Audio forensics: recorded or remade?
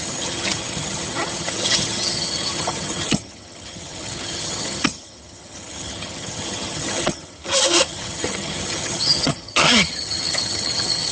remade